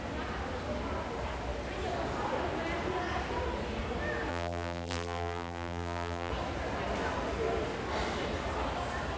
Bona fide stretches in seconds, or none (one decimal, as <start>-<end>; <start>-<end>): 0.0-4.3; 6.3-9.2